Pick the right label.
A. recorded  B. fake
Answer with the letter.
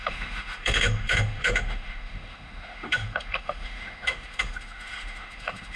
B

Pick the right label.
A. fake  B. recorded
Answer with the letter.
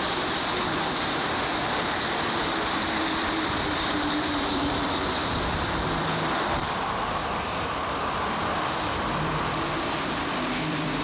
A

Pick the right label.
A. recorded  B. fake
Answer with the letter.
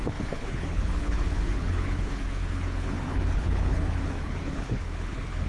B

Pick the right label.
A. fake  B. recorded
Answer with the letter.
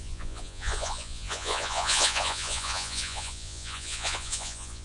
A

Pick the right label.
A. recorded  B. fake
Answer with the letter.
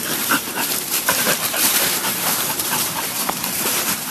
B